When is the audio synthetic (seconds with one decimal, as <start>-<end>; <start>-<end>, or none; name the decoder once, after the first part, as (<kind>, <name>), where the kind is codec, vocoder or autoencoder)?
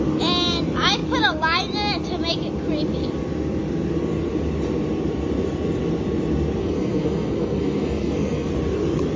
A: 6.6-8.5 (codec, SNAC)